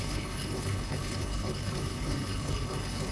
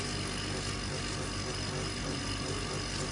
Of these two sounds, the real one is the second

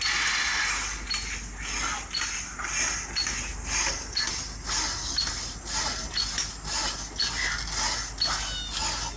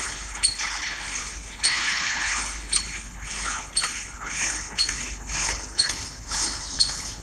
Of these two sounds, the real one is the first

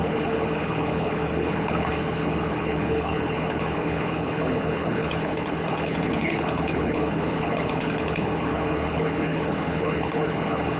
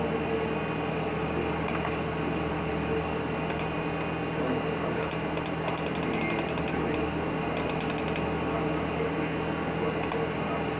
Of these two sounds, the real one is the second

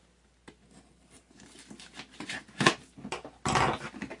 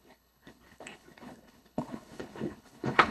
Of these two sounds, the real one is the first